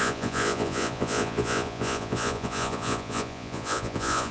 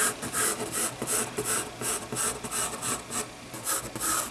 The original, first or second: second